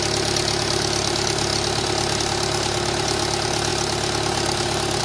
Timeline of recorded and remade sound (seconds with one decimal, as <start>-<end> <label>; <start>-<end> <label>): 0.0-5.0 recorded